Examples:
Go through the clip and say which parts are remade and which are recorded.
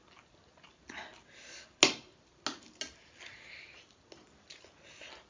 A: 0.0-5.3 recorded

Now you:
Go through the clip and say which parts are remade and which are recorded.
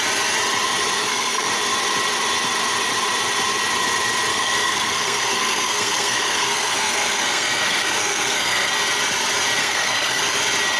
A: 0.0-1.0 recorded; 1.0-1.5 remade; 1.5-4.3 recorded; 4.3-8.7 remade; 8.7-9.6 recorded; 9.6-10.4 remade; 10.4-10.8 recorded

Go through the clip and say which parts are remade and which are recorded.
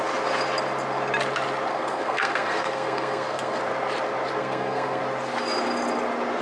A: 0.0-1.7 recorded; 1.7-3.6 remade; 3.6-4.4 recorded; 4.4-5.0 remade; 5.0-6.4 recorded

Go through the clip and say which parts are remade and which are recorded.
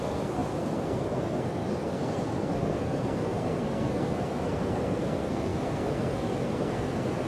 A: 0.0-7.3 remade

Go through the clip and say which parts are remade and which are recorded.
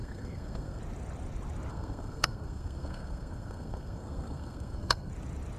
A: 0.0-0.8 remade; 0.8-1.7 recorded; 1.7-5.1 remade; 5.1-5.6 recorded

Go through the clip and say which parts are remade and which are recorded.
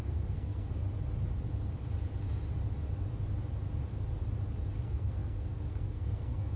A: 0.0-0.8 remade; 0.8-4.8 recorded; 4.8-6.6 remade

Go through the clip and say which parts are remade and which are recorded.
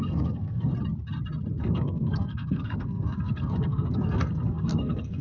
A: 0.0-0.7 remade; 0.7-1.6 recorded; 1.6-5.2 remade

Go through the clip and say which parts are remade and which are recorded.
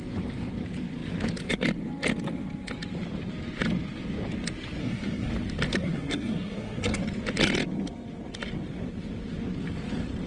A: 0.0-4.8 recorded; 4.8-5.3 remade; 5.3-5.7 recorded; 5.7-7.0 remade; 7.0-10.3 recorded